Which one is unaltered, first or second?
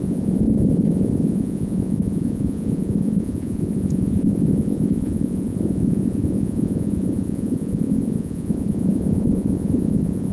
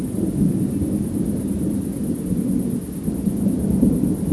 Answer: second